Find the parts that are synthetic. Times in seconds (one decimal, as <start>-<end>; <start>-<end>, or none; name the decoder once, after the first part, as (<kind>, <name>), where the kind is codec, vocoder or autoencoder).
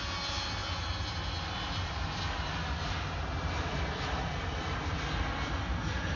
none